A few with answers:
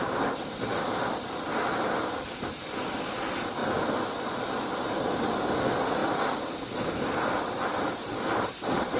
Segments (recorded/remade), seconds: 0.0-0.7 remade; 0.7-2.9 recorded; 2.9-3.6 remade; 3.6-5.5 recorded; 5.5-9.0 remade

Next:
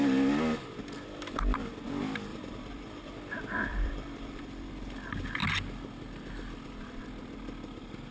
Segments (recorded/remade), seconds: 0.0-2.3 recorded; 2.3-3.1 remade; 3.1-3.7 recorded; 3.7-4.7 remade; 4.7-8.1 recorded

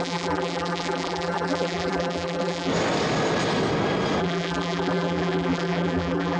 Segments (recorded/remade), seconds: 0.0-2.7 remade; 2.7-4.2 recorded; 4.2-6.4 remade

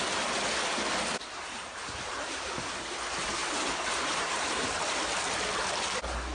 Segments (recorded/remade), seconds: 0.0-1.8 recorded; 1.8-2.5 remade; 2.5-3.4 recorded; 3.4-4.8 remade; 4.8-6.3 recorded

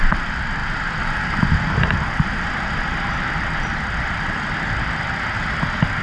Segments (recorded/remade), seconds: 0.0-6.0 recorded